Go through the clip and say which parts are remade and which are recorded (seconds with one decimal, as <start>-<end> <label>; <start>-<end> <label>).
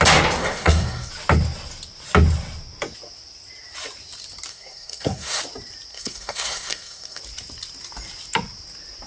0.0-0.4 recorded; 0.4-1.1 remade; 1.1-4.5 recorded; 4.5-5.4 remade; 5.4-5.9 recorded; 5.9-7.2 remade; 7.2-9.1 recorded